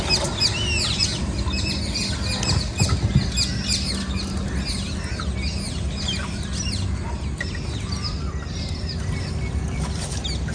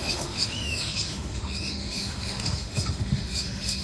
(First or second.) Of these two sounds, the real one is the first